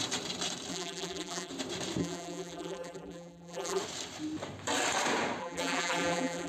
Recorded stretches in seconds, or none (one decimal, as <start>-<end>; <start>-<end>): 0.0-0.7; 1.5-2.0; 3.8-5.4

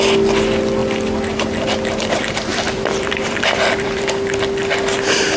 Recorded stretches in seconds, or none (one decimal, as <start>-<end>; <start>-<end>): 0.0-2.5; 4.1-5.4

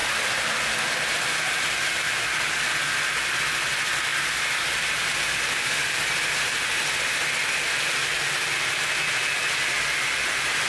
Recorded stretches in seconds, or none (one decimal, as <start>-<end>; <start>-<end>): 0.0-10.7

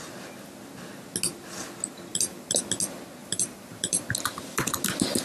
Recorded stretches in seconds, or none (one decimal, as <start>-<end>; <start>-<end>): 0.0-2.1; 2.6-3.2; 4.1-5.2

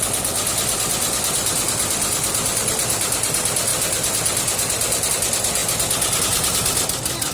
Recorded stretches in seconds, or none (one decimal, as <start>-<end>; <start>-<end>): 0.0-7.3

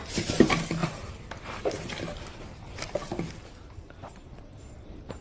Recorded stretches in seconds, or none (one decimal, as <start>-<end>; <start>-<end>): 0.0-0.8; 1.7-3.0

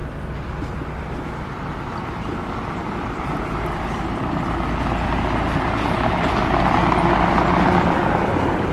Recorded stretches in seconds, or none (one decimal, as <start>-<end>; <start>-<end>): 0.0-2.8; 4.3-8.7

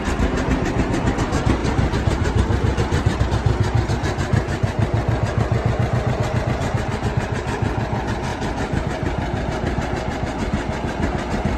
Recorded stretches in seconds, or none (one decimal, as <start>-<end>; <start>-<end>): 0.0-1.6; 3.2-8.3; 8.8-11.6